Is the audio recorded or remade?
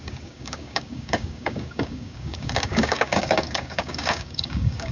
remade